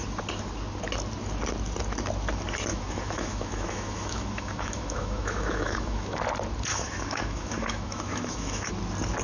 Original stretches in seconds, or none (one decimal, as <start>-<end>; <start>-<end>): 0.0-2.7; 6.2-6.7; 8.7-9.2